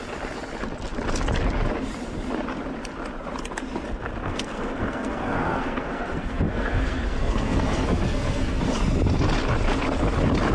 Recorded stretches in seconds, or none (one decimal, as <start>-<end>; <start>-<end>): 0.0-4.2; 8.6-10.5

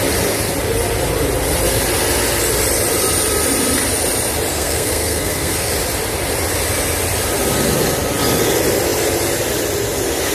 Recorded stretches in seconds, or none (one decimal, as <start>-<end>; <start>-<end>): 0.0-4.5; 5.7-10.3

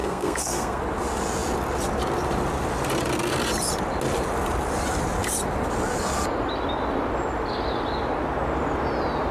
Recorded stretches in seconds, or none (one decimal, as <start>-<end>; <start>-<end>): 0.8-9.3

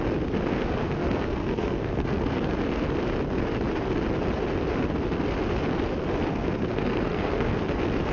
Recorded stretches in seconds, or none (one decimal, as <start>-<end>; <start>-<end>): 0.0-0.5; 2.6-6.3; 7.6-8.1

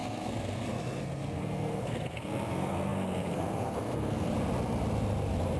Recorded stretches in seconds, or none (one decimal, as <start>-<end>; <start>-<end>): 4.3-5.6

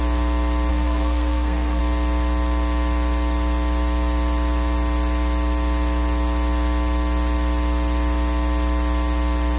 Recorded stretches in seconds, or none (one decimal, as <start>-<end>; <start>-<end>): 0.0-0.7; 1.8-9.6